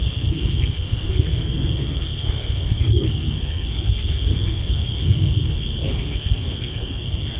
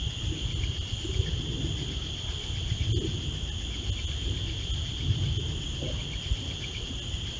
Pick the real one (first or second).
second